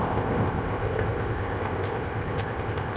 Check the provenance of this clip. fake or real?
fake